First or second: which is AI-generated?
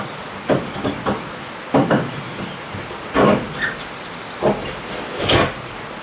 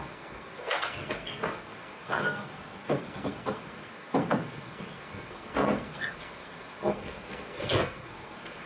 second